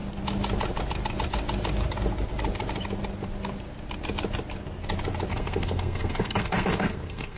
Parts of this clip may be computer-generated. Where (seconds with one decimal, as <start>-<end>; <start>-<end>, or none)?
5.3-7.4